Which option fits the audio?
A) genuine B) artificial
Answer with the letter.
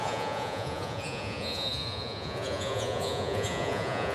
B